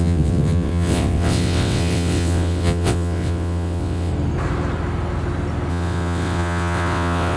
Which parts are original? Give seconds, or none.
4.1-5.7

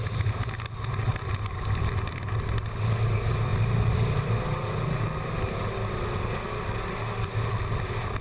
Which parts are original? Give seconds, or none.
0.0-8.2

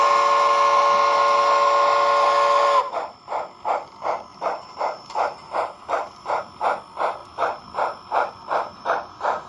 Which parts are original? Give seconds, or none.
0.0-4.3; 6.4-7.2